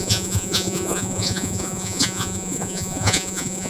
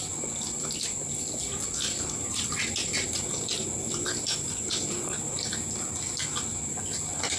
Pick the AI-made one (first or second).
first